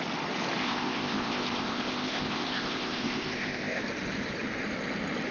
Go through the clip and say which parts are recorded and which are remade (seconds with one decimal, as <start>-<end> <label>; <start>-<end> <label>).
0.0-0.6 recorded; 0.6-3.8 remade; 3.8-5.3 recorded